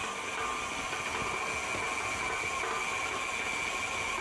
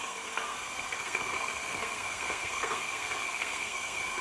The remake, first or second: second